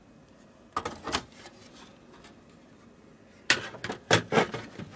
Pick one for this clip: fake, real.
real